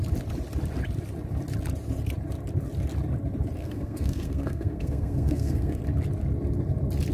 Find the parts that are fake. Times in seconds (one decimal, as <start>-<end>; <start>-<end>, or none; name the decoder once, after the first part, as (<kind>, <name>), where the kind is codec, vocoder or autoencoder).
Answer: 3.6-5.8 (codec, SNAC)